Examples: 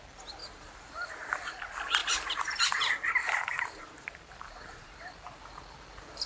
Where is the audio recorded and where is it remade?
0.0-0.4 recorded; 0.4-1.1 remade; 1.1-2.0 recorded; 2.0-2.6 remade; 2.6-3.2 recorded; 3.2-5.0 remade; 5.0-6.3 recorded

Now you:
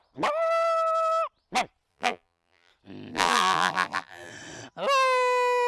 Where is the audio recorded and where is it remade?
0.0-1.9 recorded; 1.9-2.7 remade; 2.7-3.1 recorded; 3.1-4.3 remade; 4.3-5.7 recorded